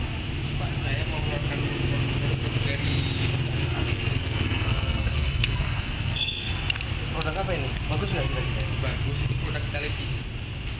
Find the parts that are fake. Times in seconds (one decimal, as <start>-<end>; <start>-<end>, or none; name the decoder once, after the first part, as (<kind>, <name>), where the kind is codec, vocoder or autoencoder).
3.6-6.5 (codec, SNAC)